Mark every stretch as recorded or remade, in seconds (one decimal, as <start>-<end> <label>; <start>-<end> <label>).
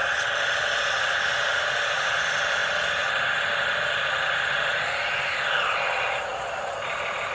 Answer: 0.0-7.3 recorded